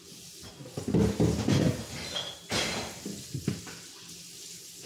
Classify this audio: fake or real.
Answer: real